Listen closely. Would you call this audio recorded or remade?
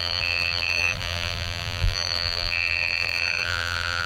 remade